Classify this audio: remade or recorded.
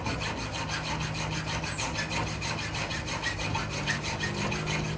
recorded